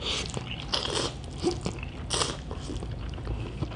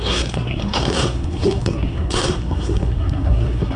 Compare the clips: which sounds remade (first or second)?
second